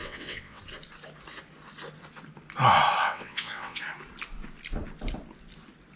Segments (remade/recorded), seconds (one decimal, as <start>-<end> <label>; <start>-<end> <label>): 0.0-0.6 remade; 0.6-3.0 recorded; 3.0-3.8 remade; 3.8-6.0 recorded